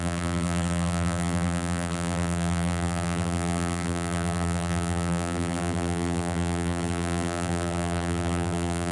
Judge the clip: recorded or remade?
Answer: remade